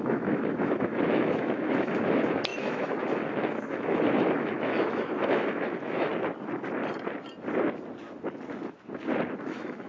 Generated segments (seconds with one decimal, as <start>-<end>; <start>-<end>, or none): 0.0-6.1; 9.4-9.9

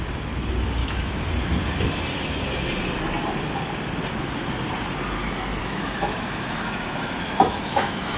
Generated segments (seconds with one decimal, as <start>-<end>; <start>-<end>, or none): 0.8-1.3; 5.6-8.2

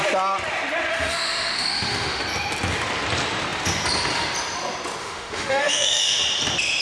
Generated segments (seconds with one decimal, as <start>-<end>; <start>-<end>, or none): 0.9-2.2; 5.0-6.2

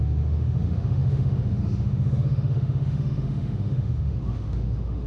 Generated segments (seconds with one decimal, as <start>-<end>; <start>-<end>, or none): 0.0-5.1

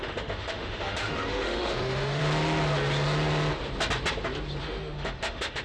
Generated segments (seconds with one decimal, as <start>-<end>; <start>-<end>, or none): 0.0-2.2; 4.6-5.6

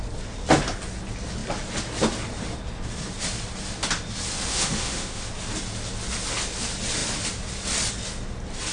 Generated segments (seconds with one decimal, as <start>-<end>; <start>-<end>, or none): 4.5-5.3

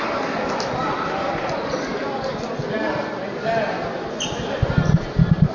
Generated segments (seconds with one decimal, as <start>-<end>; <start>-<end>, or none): none

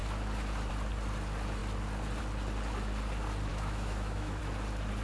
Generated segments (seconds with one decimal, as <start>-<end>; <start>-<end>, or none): 3.5-4.4